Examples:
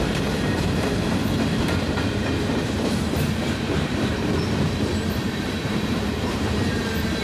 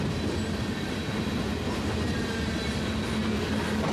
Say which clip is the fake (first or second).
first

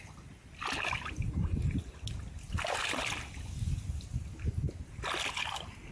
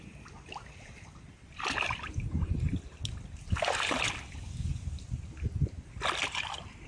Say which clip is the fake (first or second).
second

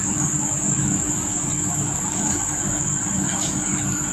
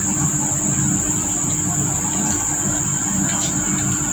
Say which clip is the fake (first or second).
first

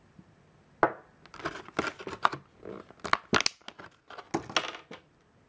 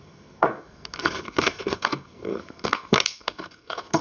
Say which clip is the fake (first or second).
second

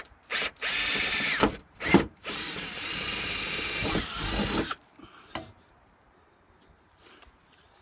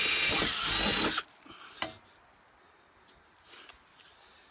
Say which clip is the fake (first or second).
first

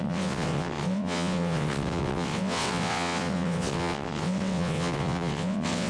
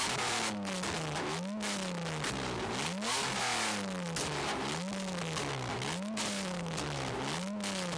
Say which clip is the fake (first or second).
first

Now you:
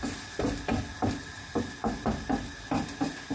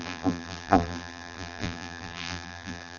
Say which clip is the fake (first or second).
second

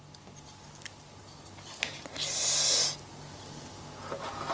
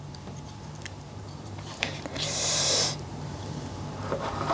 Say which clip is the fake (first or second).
second